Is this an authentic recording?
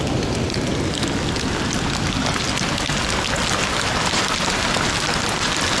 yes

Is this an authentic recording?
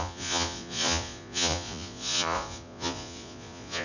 no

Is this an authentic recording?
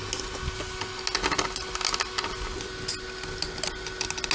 yes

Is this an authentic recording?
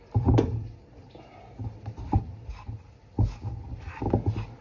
yes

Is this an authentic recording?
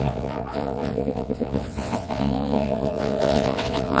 no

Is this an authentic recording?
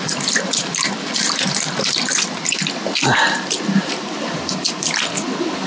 yes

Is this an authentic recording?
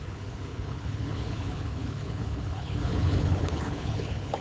no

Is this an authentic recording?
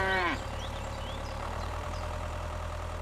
no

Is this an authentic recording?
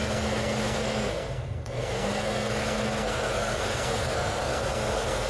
no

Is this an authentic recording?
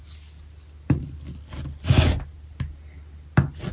yes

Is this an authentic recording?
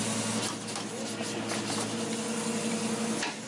yes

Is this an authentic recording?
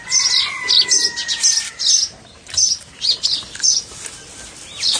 yes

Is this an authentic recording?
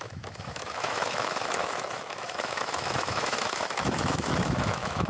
no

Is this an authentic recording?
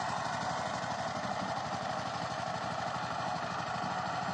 yes